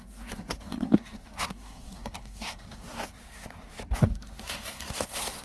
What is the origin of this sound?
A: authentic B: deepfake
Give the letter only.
B